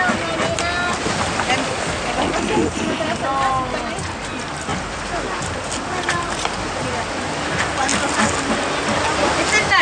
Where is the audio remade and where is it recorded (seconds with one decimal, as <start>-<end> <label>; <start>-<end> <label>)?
0.0-9.8 recorded